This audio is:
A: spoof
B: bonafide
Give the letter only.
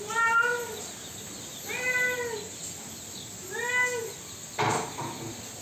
B